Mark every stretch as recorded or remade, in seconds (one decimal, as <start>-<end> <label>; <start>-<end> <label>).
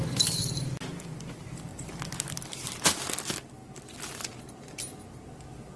0.0-5.8 recorded